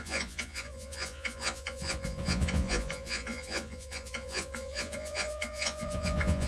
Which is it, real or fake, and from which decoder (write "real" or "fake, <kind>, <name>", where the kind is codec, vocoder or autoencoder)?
fake, vocoder, Vocos